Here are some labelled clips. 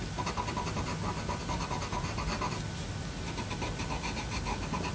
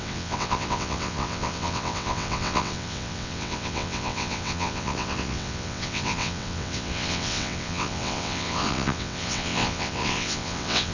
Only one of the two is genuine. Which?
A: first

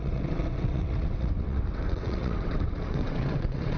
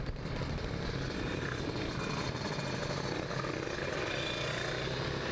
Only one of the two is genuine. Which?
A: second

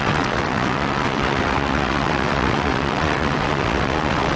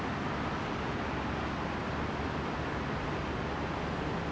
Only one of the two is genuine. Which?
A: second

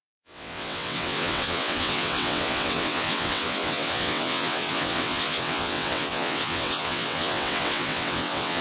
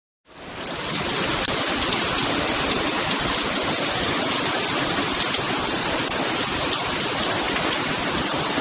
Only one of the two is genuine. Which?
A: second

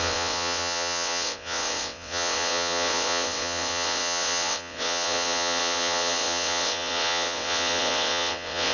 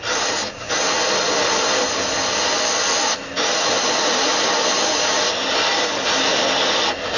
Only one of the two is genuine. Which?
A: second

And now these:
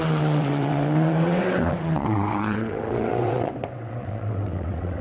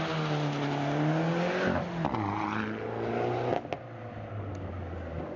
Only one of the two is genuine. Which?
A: second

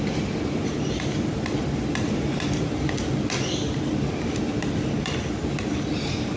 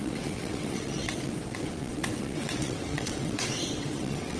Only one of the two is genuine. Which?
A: first